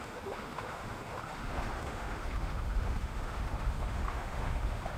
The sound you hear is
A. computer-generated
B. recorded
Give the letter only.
A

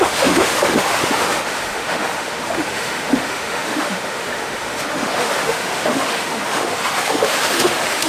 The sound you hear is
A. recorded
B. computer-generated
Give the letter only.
B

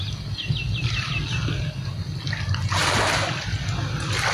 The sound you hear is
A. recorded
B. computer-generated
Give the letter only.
A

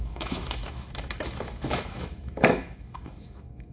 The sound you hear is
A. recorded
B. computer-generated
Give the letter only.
B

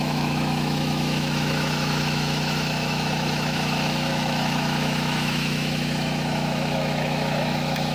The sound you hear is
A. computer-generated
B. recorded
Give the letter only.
A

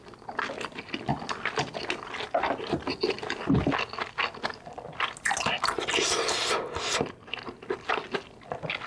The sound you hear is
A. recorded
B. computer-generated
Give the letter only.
A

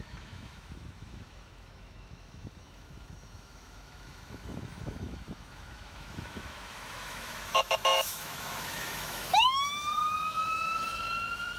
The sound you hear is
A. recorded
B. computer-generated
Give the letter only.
B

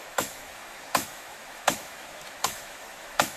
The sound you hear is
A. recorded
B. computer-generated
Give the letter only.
B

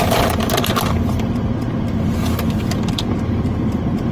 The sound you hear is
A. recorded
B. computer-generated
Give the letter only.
A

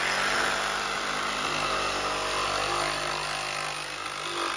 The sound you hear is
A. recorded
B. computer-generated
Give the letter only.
A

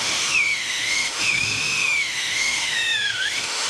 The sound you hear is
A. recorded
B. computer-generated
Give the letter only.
B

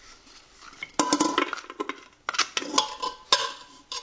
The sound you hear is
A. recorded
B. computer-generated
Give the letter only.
A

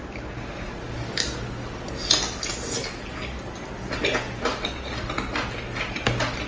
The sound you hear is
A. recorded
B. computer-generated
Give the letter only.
A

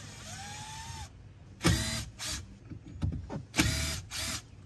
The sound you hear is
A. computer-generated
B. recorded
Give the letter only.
B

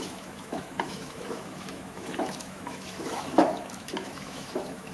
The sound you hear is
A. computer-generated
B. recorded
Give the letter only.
A